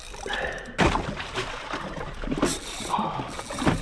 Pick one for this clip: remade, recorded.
recorded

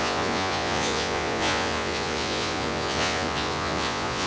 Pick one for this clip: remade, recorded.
remade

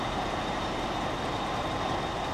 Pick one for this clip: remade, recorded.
recorded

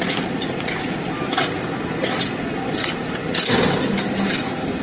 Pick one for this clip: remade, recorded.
recorded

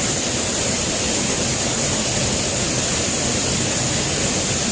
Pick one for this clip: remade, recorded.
recorded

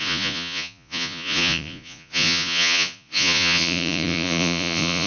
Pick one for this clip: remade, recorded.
remade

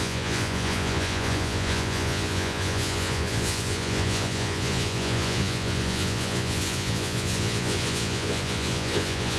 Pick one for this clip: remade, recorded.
remade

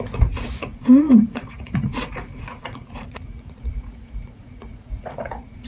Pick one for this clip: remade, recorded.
remade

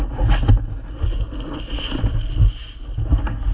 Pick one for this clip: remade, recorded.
recorded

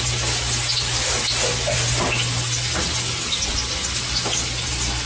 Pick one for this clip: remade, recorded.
recorded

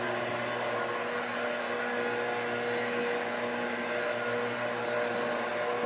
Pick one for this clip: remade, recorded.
recorded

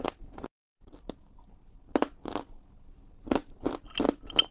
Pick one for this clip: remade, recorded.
recorded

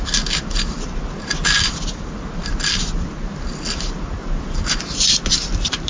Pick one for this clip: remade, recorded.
recorded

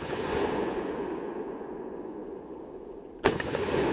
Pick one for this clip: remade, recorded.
remade